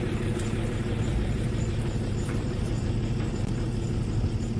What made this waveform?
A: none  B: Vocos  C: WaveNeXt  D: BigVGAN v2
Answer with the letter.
D